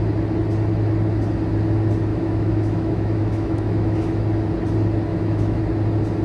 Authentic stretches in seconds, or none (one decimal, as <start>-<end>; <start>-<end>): 0.0-2.1; 4.2-5.1; 5.6-6.2